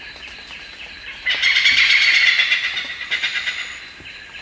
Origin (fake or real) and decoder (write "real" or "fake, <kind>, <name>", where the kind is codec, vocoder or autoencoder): real